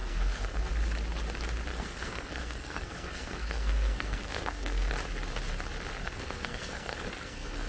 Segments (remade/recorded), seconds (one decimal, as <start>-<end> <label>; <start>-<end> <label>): 0.0-0.7 remade; 0.7-1.7 recorded; 1.7-4.9 remade; 4.9-6.0 recorded; 6.0-7.7 remade